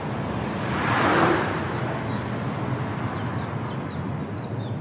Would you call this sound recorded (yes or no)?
yes